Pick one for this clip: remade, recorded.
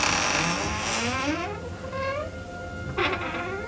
recorded